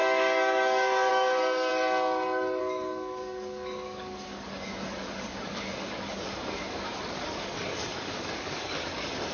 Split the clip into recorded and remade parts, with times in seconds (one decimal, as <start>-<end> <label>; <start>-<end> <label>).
0.0-1.7 remade; 1.7-2.6 recorded; 2.6-9.3 remade